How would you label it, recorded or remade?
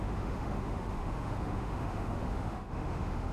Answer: remade